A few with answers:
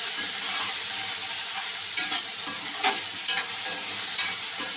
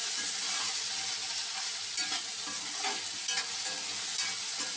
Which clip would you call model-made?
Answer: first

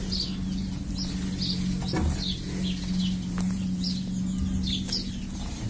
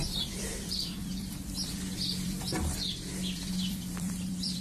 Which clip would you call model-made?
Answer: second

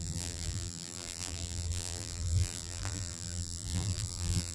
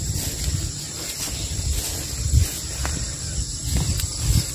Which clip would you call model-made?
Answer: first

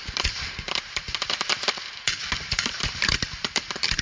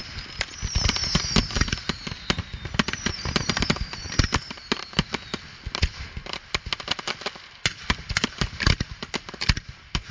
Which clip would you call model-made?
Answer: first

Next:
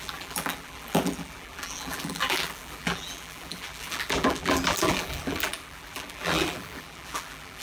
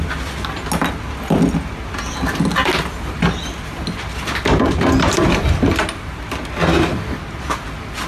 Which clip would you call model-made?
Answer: first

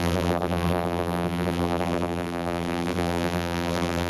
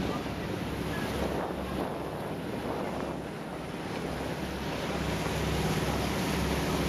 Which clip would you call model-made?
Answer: first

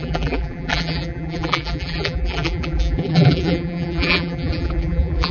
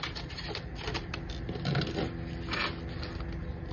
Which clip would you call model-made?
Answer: first